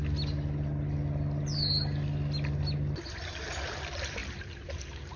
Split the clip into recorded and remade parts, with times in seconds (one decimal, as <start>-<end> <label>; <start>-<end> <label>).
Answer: 0.0-3.1 recorded; 3.1-5.2 remade